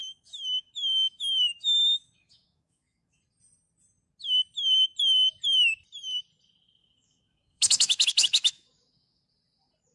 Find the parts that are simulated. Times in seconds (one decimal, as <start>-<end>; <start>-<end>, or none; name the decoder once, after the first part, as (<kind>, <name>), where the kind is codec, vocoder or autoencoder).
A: 0.0-3.2 (autoencoder, DAC-VAE); 6.8-9.2